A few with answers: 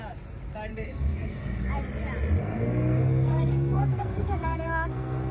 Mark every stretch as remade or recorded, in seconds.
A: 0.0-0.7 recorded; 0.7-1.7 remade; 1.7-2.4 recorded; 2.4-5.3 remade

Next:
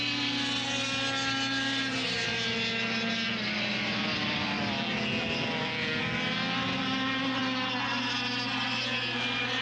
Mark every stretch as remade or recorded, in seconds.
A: 0.0-9.6 recorded

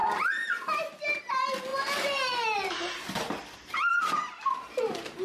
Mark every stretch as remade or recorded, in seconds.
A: 0.0-5.2 recorded

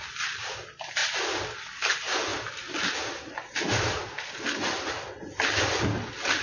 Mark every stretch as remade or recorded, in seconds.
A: 0.0-6.4 recorded

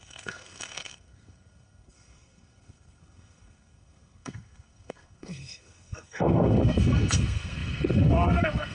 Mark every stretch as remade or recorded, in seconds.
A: 0.0-8.7 remade

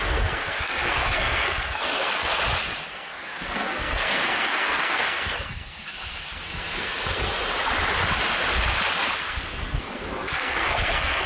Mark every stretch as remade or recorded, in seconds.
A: 0.0-2.3 remade; 2.3-2.9 recorded; 2.9-7.4 remade; 7.4-9.2 recorded; 9.2-11.3 remade

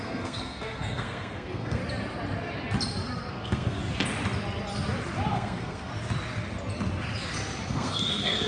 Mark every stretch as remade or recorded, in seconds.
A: 0.0-1.8 remade; 1.8-3.3 recorded; 3.3-3.8 remade; 3.8-5.3 recorded; 5.3-5.9 remade; 5.9-7.7 recorded; 7.7-8.5 remade